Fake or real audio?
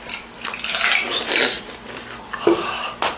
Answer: real